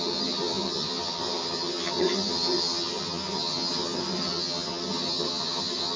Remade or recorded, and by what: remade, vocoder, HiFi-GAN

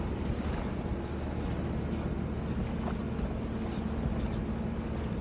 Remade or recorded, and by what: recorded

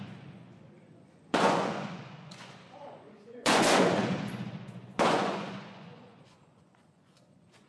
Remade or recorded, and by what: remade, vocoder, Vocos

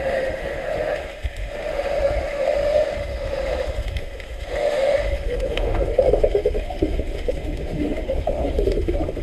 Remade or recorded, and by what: remade, autoencoder, DAC-VAE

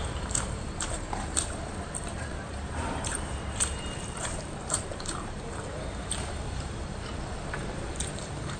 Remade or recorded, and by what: remade, vocoder, BigVGAN v2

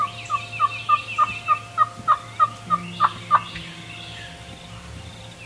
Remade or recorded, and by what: recorded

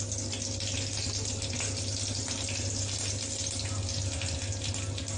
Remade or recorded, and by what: recorded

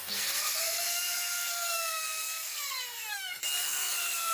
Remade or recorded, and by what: remade, codec, SNAC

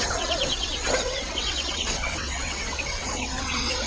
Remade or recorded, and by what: remade, vocoder, WaveNeXt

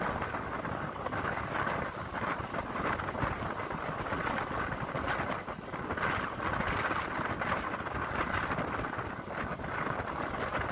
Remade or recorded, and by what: recorded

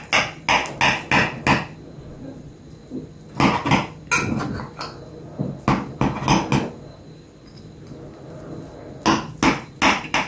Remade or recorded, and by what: recorded